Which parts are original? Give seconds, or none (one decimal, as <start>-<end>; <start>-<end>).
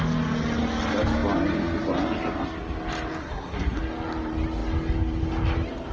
0.0-3.2; 3.8-5.9